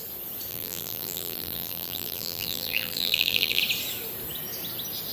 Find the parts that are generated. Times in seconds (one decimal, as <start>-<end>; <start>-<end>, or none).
0.5-3.6